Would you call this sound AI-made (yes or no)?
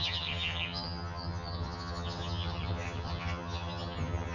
yes